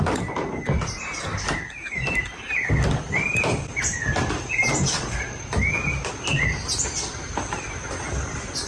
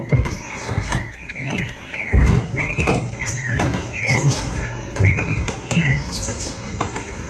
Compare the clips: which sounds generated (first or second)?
second